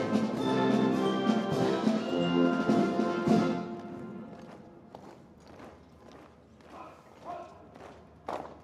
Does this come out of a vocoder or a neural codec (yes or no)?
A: no